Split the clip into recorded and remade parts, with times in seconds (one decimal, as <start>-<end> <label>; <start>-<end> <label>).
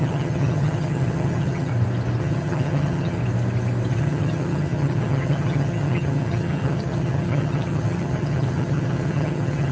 0.0-1.7 remade; 1.7-2.2 recorded; 2.2-3.2 remade; 3.2-3.9 recorded; 3.9-9.7 remade